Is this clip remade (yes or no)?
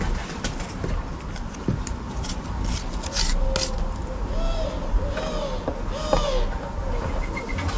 no